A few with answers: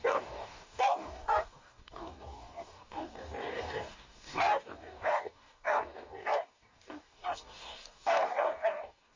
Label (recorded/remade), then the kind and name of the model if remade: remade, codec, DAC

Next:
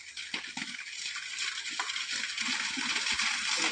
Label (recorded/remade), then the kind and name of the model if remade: recorded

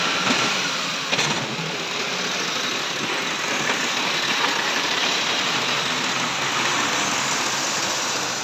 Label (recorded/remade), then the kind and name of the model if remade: recorded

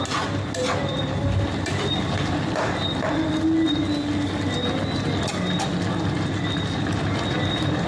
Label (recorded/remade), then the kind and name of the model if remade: recorded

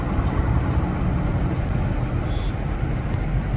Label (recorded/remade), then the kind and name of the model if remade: recorded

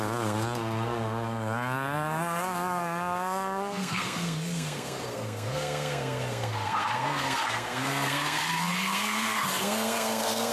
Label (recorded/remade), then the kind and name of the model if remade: remade, codec, SNAC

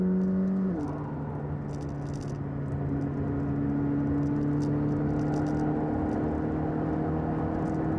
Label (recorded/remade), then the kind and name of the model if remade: recorded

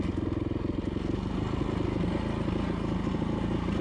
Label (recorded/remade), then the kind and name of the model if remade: recorded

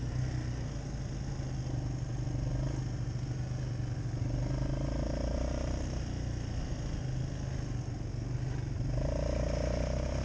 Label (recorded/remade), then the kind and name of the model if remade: recorded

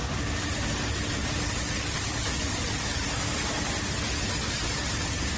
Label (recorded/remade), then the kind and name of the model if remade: recorded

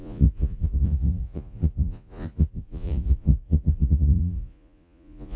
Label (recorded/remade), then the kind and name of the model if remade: remade, vocoder, Vocos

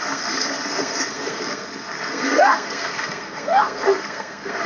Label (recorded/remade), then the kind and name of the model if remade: remade, codec, SNAC